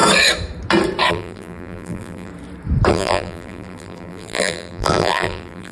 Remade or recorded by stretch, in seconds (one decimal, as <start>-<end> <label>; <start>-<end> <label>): 0.0-1.1 recorded; 1.1-2.3 remade; 2.3-2.9 recorded; 2.9-5.7 remade

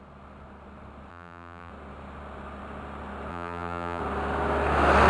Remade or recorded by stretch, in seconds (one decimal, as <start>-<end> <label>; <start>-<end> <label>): 0.0-1.1 recorded; 1.1-1.7 remade; 1.7-3.3 recorded; 3.3-4.0 remade; 4.0-5.1 recorded

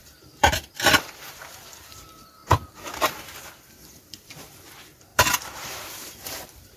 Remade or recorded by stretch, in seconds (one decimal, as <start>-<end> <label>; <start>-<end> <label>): 0.0-2.4 remade; 2.4-3.9 recorded; 3.9-6.8 remade

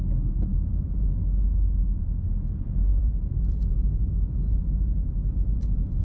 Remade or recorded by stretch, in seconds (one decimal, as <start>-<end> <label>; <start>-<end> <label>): 0.0-0.5 recorded; 0.5-1.1 remade; 1.1-2.9 recorded; 2.9-5.6 remade; 5.6-6.0 recorded